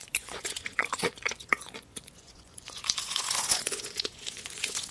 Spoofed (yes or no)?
yes